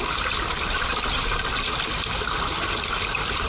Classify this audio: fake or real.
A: real